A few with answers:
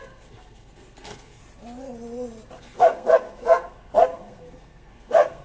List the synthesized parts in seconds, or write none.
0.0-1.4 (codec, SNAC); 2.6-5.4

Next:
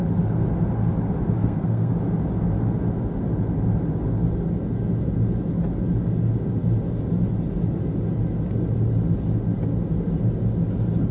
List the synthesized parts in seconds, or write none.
1.4-1.9 (codec, SNAC)